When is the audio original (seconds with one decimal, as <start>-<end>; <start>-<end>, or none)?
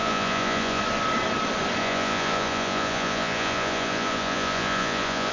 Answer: 0.8-1.8